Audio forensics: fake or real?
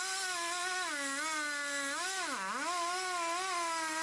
real